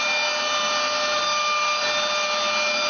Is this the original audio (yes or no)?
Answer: yes